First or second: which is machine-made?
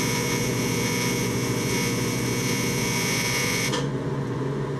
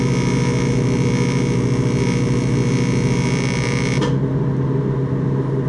first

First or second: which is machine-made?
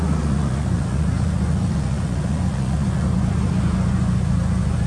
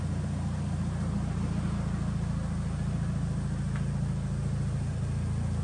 first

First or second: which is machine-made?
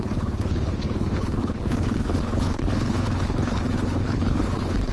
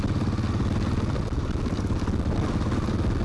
first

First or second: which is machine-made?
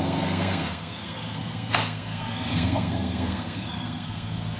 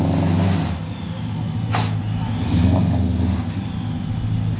first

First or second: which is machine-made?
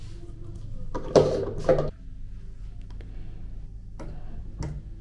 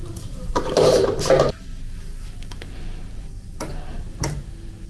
second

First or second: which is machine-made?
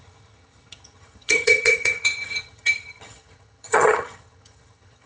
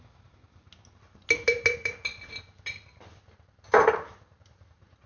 first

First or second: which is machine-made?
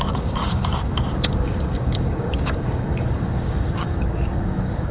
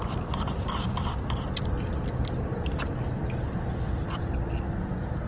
first